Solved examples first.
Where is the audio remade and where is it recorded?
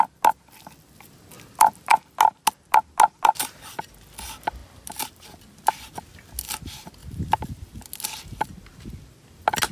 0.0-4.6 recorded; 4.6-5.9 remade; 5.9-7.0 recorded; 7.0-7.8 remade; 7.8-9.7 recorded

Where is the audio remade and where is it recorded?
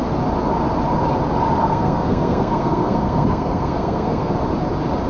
0.0-1.6 recorded; 1.6-4.3 remade; 4.3-5.1 recorded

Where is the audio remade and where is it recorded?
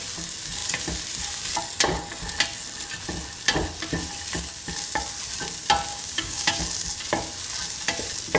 0.0-5.9 recorded; 5.9-6.6 remade; 6.6-8.4 recorded